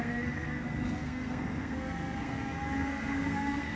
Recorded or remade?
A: remade